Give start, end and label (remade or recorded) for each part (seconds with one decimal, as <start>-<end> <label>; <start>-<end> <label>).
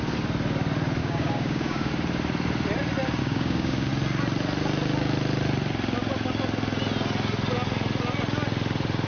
0.0-1.0 recorded; 1.0-1.9 remade; 1.9-3.2 recorded; 3.2-3.9 remade; 3.9-9.1 recorded